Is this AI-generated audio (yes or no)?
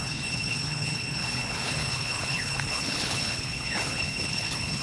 yes